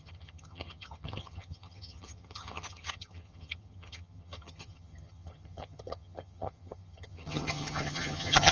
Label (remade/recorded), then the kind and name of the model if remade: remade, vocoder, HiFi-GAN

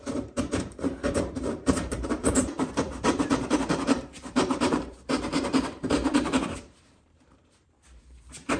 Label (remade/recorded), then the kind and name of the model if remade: remade, vocoder, BigVGAN v2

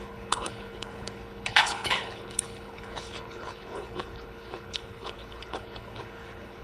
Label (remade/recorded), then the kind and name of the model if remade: remade, codec, HILCodec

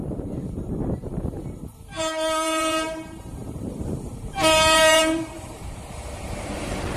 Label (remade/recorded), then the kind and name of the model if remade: remade, vocoder, BigVGAN v2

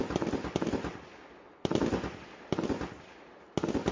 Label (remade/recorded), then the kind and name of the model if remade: recorded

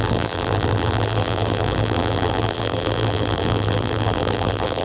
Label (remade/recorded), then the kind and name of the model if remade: remade, vocoder, BigVGAN v2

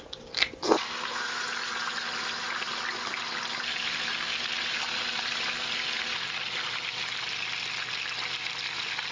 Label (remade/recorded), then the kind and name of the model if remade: recorded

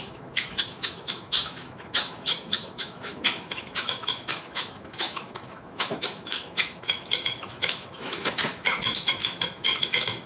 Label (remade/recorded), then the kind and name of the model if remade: remade, autoencoder, DAC-VAE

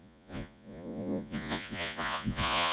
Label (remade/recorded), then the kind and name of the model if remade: remade, vocoder, Vocos